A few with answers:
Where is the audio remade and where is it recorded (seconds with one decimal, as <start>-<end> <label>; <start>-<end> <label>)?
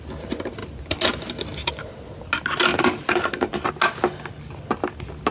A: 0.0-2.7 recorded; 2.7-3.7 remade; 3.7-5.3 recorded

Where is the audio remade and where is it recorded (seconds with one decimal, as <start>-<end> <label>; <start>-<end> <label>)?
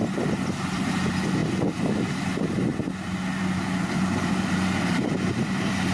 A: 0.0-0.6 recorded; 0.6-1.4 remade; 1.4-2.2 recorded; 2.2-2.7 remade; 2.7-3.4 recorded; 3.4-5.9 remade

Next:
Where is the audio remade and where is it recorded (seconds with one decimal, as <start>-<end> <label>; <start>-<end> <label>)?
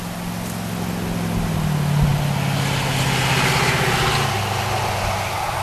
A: 0.0-5.6 recorded